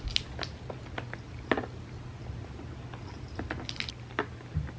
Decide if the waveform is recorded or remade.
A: recorded